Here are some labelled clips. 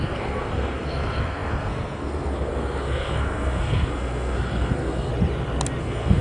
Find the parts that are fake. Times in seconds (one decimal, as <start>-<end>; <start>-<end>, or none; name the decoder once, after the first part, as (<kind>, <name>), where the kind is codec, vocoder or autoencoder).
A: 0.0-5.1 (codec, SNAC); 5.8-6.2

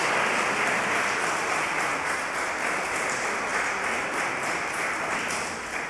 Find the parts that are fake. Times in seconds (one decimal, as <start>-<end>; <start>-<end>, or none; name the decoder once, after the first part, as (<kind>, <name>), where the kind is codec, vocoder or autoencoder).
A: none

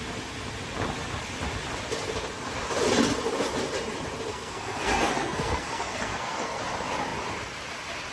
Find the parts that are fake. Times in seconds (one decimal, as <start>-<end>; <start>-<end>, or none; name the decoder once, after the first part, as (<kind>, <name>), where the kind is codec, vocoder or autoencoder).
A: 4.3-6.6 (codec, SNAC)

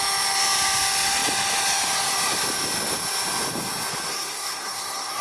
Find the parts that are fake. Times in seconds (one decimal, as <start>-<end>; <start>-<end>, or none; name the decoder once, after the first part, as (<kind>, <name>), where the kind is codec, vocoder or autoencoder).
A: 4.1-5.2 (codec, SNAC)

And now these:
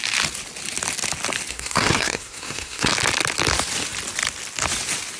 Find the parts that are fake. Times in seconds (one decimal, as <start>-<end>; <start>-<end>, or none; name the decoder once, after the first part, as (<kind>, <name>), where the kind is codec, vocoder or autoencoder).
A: 1.5-2.9 (codec, SNAC)

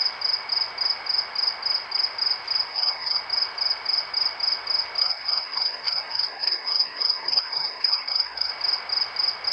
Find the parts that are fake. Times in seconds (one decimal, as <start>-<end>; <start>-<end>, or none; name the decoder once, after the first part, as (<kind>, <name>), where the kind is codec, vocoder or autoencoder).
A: 2.7-3.2 (codec, SNAC); 5.0-8.5